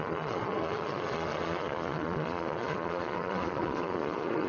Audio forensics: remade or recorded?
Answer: remade